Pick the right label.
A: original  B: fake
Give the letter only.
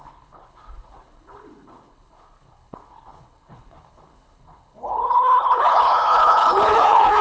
B